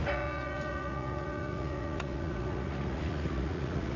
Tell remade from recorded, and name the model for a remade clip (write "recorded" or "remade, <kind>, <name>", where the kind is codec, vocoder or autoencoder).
remade, vocoder, Vocos